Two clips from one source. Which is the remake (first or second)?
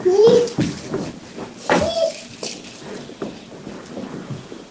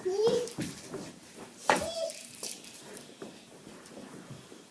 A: second